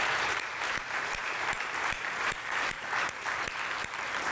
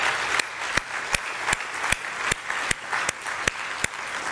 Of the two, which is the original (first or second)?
second